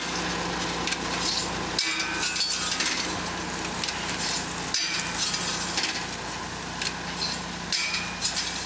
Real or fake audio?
real